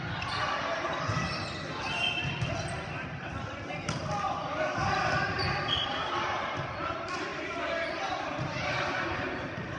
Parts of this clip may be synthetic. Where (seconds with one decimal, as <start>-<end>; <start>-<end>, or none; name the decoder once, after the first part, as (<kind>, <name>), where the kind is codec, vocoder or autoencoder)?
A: 7.3-9.8 (vocoder, BigVGAN v2)